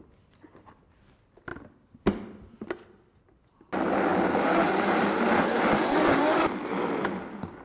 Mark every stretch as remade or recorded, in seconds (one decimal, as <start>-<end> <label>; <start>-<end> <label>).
0.0-7.6 recorded